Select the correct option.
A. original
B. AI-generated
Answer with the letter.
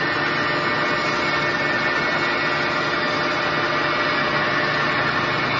A